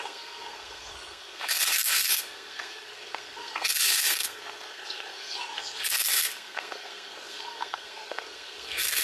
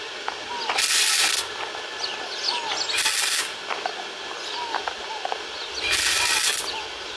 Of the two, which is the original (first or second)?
second